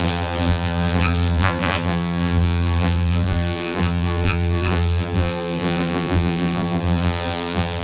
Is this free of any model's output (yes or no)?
no